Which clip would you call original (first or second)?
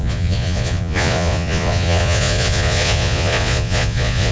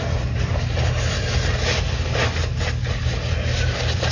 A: second